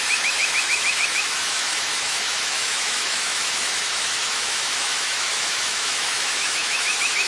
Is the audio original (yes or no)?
no